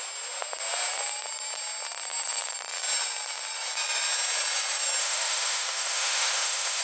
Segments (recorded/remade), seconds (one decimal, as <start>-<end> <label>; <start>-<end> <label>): 0.0-5.0 recorded; 5.0-6.8 remade